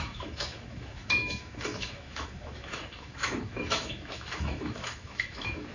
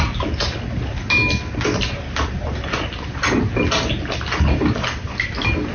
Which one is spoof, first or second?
first